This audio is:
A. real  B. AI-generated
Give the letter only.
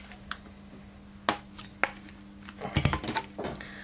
A